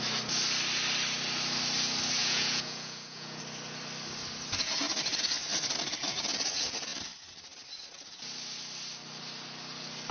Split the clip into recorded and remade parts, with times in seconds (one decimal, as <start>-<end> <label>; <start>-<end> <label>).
0.0-2.2 recorded; 2.2-3.4 remade; 3.4-10.1 recorded